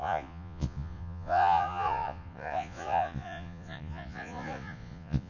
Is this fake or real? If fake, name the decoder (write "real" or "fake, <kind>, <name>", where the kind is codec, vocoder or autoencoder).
fake, vocoder, Vocos